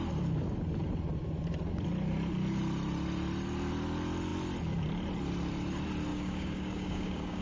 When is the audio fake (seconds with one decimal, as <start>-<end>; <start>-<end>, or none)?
6.1-7.4